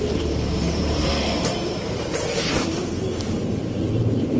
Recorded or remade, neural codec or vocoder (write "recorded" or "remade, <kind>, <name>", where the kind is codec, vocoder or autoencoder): remade, vocoder, BigVGAN v2